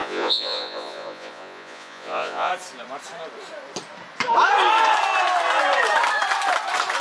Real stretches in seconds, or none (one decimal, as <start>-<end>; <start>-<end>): 2.5-7.0